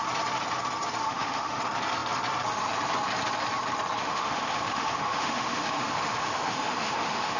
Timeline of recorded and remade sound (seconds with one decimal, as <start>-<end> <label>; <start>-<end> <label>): 0.0-1.0 recorded; 1.0-1.6 remade; 1.6-4.0 recorded; 4.0-7.4 remade

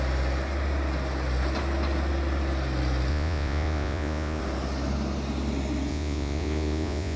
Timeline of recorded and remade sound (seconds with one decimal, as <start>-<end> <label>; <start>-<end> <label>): 0.0-3.1 recorded; 3.1-4.4 remade; 4.4-5.9 recorded; 5.9-7.2 remade

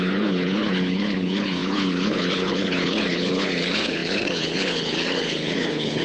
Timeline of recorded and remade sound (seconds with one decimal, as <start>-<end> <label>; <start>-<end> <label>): 0.0-6.0 remade

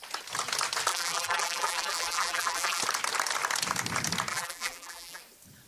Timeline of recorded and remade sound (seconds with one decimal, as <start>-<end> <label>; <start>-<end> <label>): 0.0-0.9 recorded; 0.9-2.8 remade; 2.8-4.3 recorded; 4.3-5.2 remade; 5.2-5.7 recorded

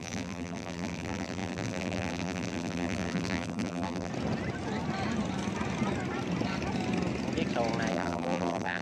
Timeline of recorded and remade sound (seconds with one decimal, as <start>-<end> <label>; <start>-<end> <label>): 0.0-4.1 remade; 4.1-7.9 recorded; 7.9-8.8 remade